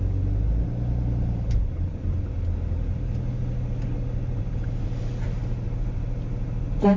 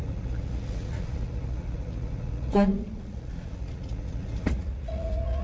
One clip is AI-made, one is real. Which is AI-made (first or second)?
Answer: second